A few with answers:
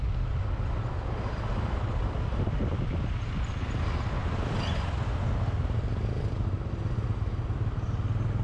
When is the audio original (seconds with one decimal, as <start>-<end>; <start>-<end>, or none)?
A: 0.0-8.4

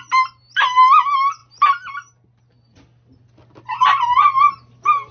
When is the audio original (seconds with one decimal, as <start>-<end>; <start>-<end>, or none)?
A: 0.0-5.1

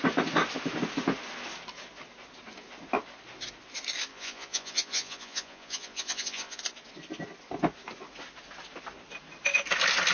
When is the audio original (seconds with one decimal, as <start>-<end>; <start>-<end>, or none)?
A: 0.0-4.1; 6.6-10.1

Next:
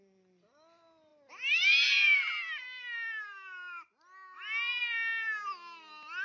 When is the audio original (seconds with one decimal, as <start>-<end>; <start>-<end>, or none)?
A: 0.0-6.2

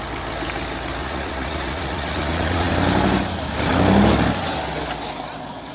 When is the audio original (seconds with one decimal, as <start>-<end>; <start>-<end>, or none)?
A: 0.0-1.0; 2.7-5.7